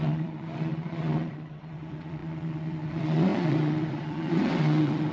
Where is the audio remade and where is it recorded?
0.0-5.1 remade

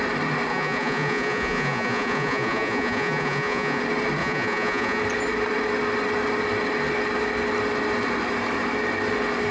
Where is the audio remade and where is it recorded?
0.0-0.5 recorded; 0.5-3.8 remade; 3.8-4.2 recorded; 4.2-5.0 remade; 5.0-9.5 recorded

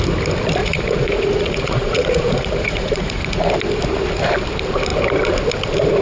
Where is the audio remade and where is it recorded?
0.0-0.6 recorded; 0.6-3.5 remade; 3.5-6.0 recorded

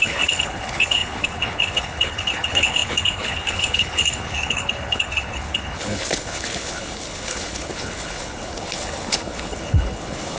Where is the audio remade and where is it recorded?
0.0-10.4 remade

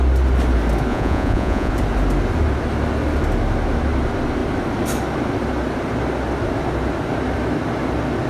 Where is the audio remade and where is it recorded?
0.0-0.9 recorded; 0.9-1.7 remade; 1.7-8.3 recorded

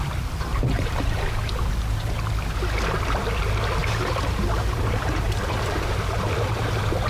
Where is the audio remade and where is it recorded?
0.0-0.5 recorded; 0.5-1.7 remade; 1.7-3.8 recorded; 3.8-7.1 remade

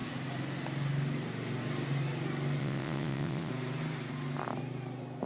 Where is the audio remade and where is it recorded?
0.0-2.6 recorded; 2.6-3.5 remade; 3.5-5.3 recorded

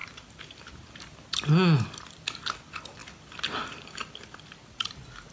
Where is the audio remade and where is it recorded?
0.0-5.3 recorded